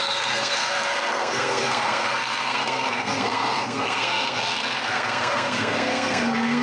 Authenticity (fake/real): fake